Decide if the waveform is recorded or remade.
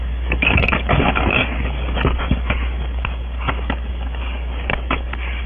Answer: remade